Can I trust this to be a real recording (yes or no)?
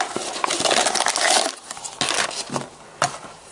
yes